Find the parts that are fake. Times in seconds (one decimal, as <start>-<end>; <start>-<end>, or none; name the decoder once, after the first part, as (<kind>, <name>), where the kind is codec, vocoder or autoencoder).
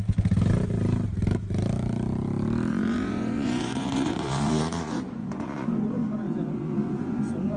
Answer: 2.7-7.6 (vocoder, Vocos)